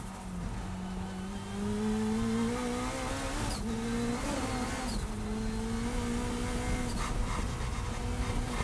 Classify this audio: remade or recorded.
recorded